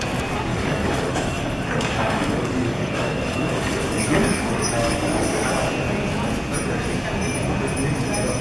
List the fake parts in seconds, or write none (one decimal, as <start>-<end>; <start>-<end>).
0.5-5.5